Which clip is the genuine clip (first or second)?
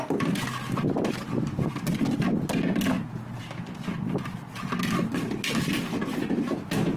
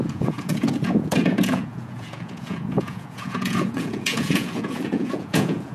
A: first